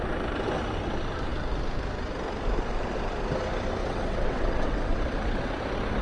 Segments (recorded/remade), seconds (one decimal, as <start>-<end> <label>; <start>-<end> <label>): 0.0-3.8 recorded; 3.8-5.5 remade; 5.5-6.0 recorded